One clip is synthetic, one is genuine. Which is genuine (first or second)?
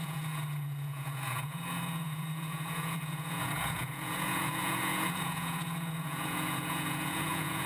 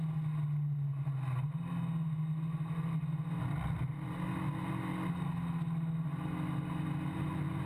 second